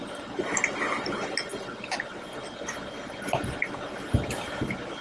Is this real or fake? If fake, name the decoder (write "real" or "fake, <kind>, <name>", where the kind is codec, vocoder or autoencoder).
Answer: real